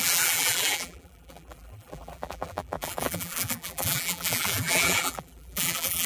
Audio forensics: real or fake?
fake